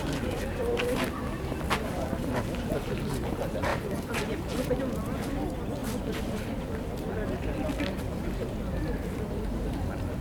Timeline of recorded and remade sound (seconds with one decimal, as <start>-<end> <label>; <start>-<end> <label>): 0.0-3.7 recorded; 3.7-4.8 remade; 4.8-10.2 recorded